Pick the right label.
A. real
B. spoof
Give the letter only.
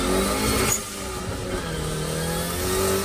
A